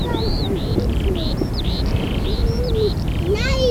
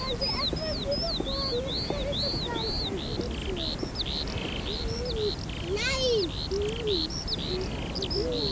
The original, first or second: second